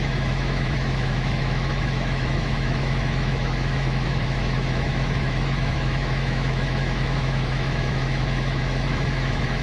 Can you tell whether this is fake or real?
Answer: fake